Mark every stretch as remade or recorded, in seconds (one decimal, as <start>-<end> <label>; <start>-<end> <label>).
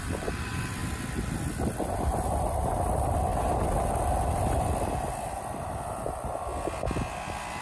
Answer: 0.0-0.8 remade; 0.8-1.5 recorded; 1.5-3.3 remade; 3.3-5.2 recorded; 5.2-6.5 remade; 6.5-7.6 recorded